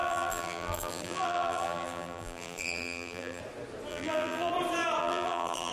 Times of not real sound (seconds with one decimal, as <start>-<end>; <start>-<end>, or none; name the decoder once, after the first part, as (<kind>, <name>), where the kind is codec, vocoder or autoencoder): 0.0-3.4 (vocoder, BigVGAN v2); 3.9-4.5; 5.0-5.7